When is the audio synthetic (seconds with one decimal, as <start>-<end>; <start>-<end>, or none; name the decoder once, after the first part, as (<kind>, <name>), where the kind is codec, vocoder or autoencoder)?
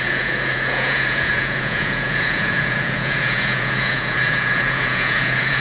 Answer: 0.0-5.6 (vocoder, Vocos)